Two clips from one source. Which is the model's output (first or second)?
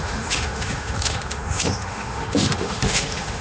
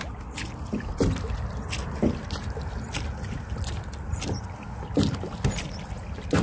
first